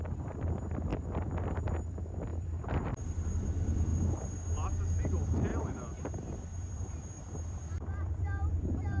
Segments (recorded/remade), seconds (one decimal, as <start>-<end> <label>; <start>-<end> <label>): 0.0-3.9 remade; 3.9-5.0 recorded; 5.0-9.0 remade